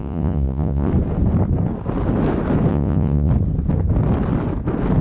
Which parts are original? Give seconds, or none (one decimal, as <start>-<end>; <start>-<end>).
0.9-2.7; 3.3-5.0